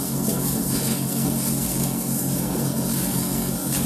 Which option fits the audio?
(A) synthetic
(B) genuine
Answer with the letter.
A